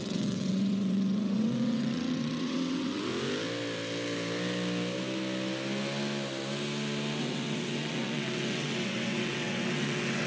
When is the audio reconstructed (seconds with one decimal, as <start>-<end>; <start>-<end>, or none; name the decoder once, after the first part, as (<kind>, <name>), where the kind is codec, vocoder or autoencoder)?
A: 0.0-3.1 (vocoder, WaveNeXt); 7.2-10.3

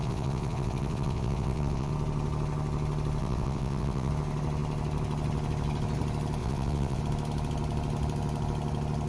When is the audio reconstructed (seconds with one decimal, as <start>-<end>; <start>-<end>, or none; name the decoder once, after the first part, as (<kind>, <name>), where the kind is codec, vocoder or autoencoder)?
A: 0.0-1.9 (vocoder, WaveNeXt); 3.2-4.1; 6.4-7.0

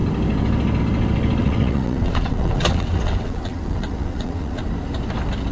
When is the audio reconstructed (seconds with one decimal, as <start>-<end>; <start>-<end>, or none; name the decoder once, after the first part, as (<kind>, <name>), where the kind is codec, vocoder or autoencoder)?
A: 1.4-4.6 (vocoder, WaveNeXt)

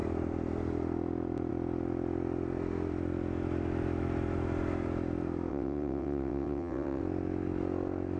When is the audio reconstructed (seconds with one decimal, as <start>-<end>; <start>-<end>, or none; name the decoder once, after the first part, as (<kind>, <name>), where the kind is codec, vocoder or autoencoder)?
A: 5.5-7.0 (vocoder, WaveNeXt)